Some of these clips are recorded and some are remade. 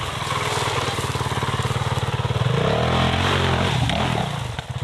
recorded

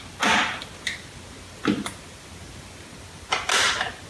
recorded